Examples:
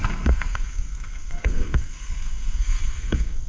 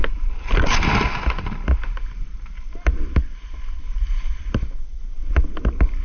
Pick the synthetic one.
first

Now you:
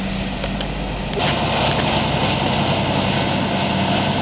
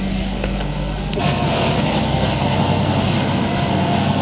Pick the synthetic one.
second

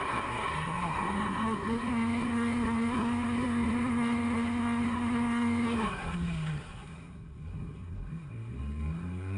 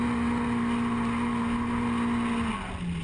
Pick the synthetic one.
first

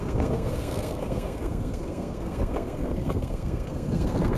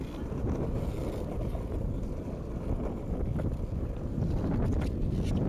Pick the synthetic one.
first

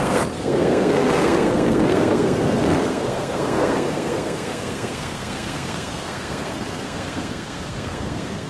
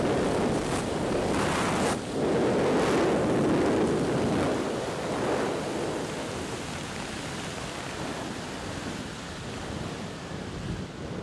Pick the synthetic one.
first